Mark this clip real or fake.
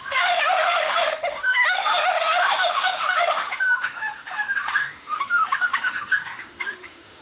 fake